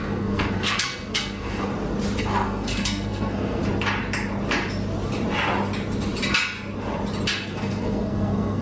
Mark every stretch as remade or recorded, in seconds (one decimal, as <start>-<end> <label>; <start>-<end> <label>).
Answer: 0.0-1.7 remade; 1.7-2.2 recorded; 2.2-3.6 remade; 3.6-7.3 recorded; 7.3-8.6 remade